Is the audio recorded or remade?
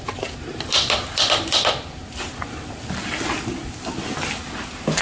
recorded